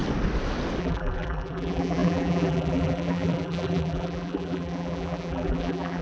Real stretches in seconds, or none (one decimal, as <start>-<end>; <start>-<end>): 0.0-0.8